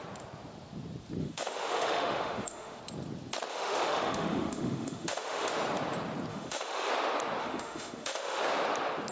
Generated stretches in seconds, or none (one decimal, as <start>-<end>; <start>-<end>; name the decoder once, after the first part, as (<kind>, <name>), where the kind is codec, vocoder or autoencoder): 1.2-2.8 (autoencoder, DAC-VAE); 3.5-5.5; 6.3-6.9; 7.4-8.4